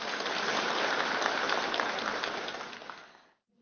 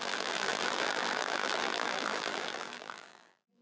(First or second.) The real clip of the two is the first